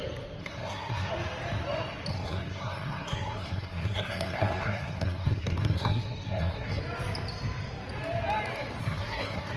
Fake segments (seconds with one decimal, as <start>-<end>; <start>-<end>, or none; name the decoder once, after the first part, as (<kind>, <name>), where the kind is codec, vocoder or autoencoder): 0.4-1.1 (codec, SNAC); 2.1-6.8; 8.8-9.6